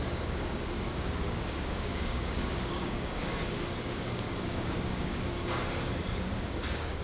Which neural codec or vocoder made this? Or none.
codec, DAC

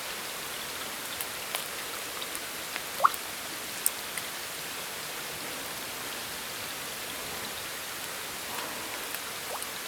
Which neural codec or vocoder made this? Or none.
none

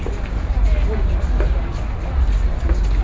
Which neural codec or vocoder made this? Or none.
none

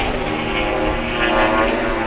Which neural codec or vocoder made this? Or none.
none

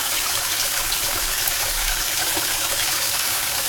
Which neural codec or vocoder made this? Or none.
codec, DAC